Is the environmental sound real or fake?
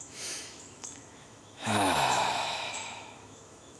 fake